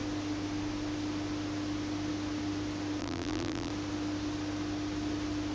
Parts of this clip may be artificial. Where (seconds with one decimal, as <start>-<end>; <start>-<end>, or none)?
3.0-3.7